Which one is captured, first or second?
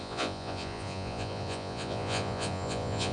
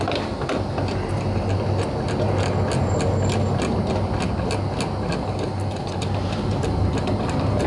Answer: second